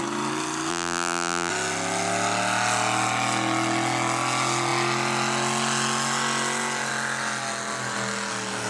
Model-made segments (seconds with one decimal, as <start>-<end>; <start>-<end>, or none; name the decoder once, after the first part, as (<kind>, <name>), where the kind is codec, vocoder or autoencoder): 0.7-1.5 (vocoder, BigVGAN v2)